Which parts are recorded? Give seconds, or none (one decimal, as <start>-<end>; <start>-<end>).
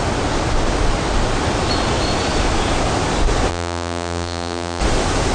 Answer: 0.0-3.5; 4.8-5.3